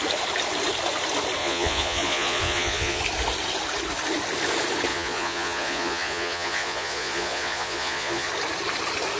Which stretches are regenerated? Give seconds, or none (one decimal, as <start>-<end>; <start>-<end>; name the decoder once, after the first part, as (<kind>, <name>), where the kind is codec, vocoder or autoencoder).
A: 1.4-3.0 (vocoder, Vocos); 4.9-8.3